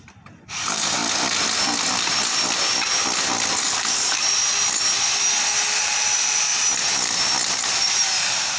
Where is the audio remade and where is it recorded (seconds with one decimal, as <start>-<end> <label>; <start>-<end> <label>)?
0.0-1.0 remade; 1.0-3.6 recorded; 3.6-4.4 remade; 4.4-5.8 recorded; 5.8-6.5 remade; 6.5-7.5 recorded; 7.5-8.6 remade